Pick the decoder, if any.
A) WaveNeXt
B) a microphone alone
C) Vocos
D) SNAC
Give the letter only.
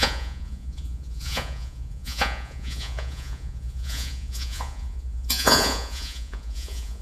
C